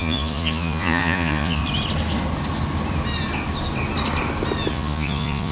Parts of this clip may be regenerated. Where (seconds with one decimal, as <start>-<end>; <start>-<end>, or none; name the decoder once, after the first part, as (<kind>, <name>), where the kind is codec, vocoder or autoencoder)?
0.0-1.6 (vocoder, Vocos); 4.7-5.5